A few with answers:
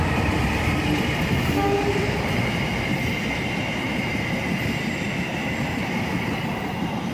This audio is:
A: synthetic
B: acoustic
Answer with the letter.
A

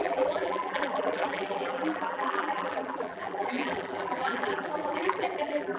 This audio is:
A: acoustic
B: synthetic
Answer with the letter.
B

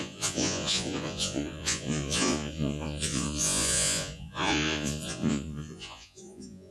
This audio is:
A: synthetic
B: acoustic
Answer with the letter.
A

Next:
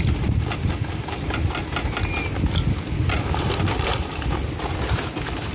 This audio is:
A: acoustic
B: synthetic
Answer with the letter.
A